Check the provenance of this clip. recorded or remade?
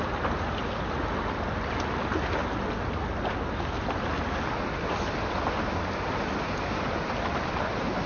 recorded